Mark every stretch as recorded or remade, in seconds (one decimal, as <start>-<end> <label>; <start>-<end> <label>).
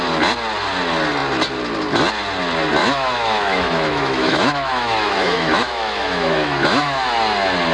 0.0-2.8 recorded; 2.8-7.1 remade; 7.1-7.7 recorded